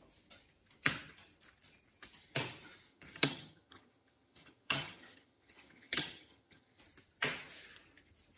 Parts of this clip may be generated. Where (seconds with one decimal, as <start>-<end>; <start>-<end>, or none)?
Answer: 2.9-6.8